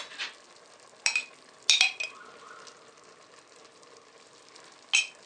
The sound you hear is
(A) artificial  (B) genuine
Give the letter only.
B